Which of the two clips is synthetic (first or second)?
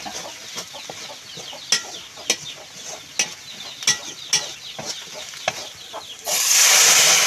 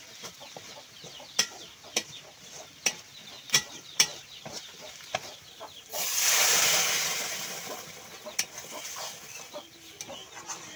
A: second